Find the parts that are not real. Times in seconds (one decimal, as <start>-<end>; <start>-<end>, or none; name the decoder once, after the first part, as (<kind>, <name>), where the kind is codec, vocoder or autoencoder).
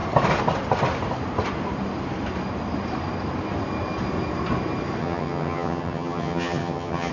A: 5.0-7.1 (vocoder, HiFi-GAN)